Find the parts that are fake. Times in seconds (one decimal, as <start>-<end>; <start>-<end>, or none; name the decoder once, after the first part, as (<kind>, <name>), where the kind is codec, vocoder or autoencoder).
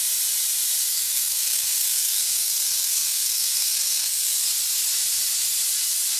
0.8-4.5 (codec, SNAC)